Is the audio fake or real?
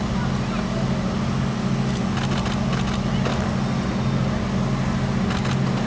real